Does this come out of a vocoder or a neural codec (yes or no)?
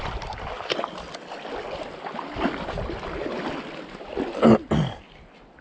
no